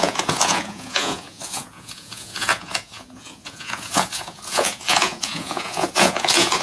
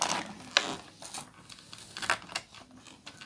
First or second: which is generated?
first